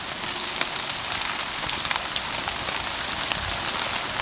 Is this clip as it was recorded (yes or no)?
yes